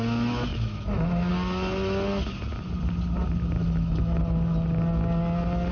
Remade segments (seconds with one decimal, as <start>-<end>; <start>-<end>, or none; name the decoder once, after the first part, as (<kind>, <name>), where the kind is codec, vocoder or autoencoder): 0.5-1.3 (autoencoder, DAC-VAE); 3.6-4.2